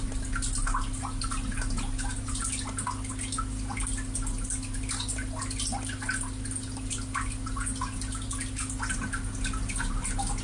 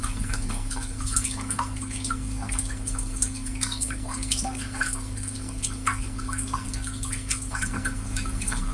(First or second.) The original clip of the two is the first